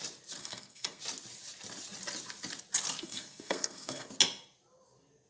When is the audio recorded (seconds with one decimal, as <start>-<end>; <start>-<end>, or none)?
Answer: 0.0-0.4; 1.0-3.0; 4.1-5.3